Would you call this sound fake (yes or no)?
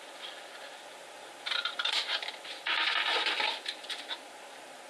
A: yes